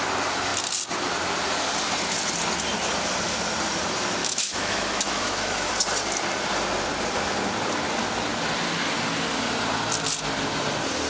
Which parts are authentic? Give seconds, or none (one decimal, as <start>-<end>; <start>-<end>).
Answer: 0.0-4.2; 5.7-11.1